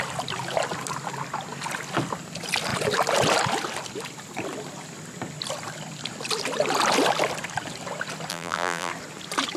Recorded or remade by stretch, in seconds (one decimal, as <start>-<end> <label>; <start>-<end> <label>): 0.0-8.3 recorded; 8.3-8.9 remade; 8.9-9.6 recorded